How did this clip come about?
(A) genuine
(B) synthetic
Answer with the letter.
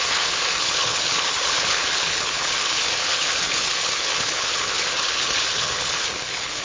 B